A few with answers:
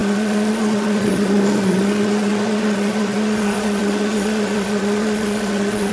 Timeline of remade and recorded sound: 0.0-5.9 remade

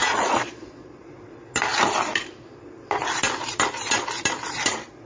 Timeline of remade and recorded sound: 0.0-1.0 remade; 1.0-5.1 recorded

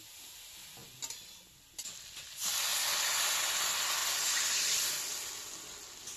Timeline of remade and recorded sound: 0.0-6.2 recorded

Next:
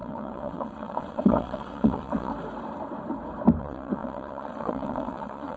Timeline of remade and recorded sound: 0.0-2.3 remade; 2.3-3.6 recorded; 3.6-5.6 remade